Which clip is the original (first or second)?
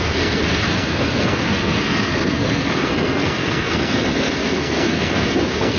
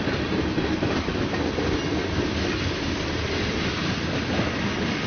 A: second